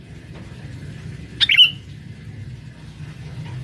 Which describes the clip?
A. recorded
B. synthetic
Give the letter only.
A